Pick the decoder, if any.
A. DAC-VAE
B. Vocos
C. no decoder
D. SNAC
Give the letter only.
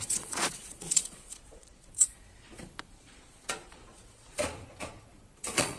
B